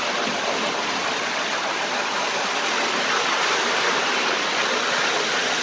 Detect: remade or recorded recorded